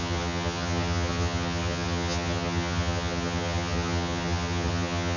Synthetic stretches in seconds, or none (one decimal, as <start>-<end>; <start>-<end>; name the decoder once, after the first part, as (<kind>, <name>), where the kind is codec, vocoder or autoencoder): 0.0-5.2 (vocoder, HiFi-GAN)